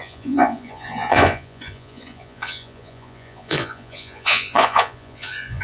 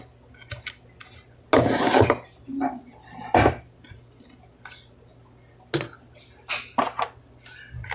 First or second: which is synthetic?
first